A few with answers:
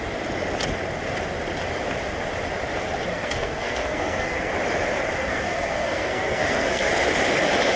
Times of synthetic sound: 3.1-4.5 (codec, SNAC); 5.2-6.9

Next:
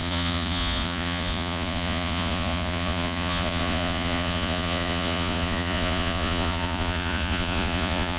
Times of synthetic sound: 0.0-8.2 (vocoder, Vocos)

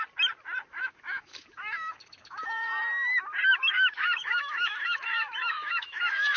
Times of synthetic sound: 0.7-2.7 (autoencoder, DAC-VAE); 3.5-6.4

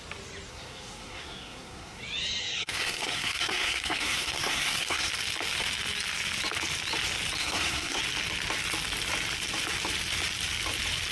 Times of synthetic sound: 0.5-2.0 (codec, SNAC); 2.4-5.1; 7.4-8.0

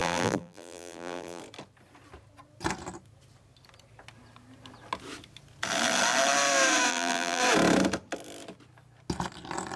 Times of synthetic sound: 0.0-1.4 (vocoder, BigVGAN v2); 6.9-7.4

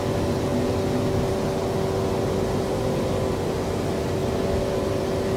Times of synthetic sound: none

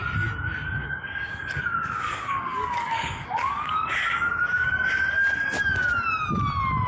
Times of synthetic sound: 0.8-4.9 (codec, DAC)